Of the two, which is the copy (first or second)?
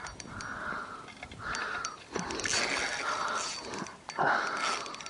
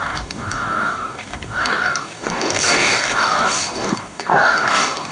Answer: second